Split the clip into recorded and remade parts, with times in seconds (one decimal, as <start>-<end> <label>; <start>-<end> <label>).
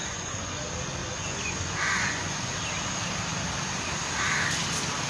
0.0-0.6 remade; 0.6-1.0 recorded; 1.0-2.5 remade; 2.5-5.1 recorded